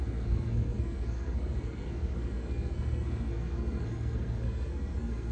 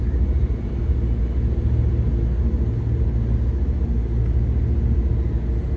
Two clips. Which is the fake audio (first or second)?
first